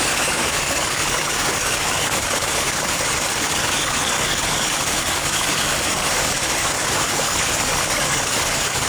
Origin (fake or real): fake